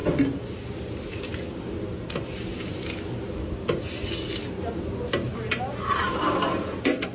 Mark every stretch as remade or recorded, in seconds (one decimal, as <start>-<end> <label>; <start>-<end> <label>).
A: 0.0-7.1 recorded